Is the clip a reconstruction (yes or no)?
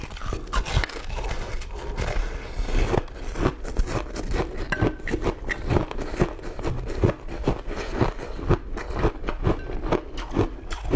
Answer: no